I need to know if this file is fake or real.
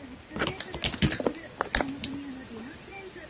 real